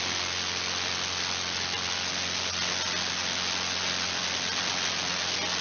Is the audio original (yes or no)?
yes